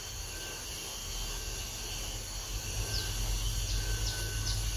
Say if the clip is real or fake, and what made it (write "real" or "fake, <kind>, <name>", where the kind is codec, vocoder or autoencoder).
real